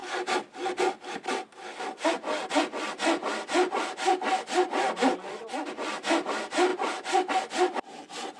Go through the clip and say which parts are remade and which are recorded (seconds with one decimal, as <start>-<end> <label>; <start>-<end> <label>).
0.0-8.4 recorded